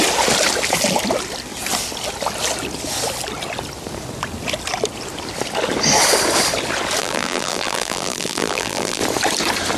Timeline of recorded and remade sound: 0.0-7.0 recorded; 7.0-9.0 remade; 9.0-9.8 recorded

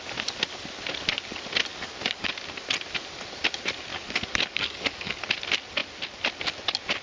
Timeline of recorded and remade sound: 0.0-1.7 recorded; 1.7-2.3 remade; 2.3-3.9 recorded; 3.9-5.2 remade; 5.2-7.0 recorded

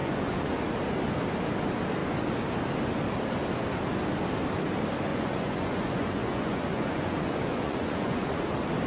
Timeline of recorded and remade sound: 0.0-0.6 remade; 0.6-5.1 recorded; 5.1-8.4 remade; 8.4-8.9 recorded

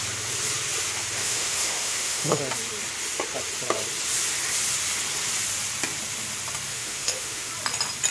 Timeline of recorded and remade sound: 0.0-1.2 recorded; 1.2-2.4 remade; 2.4-6.7 recorded; 6.7-7.5 remade; 7.5-8.1 recorded